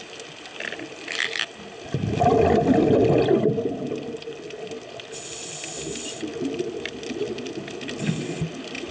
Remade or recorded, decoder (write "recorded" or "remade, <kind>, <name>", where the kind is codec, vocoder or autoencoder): recorded